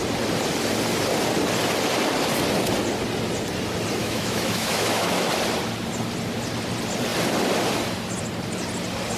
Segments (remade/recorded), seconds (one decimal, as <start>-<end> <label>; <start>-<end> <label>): 0.0-4.0 recorded; 4.0-5.3 remade; 5.3-9.2 recorded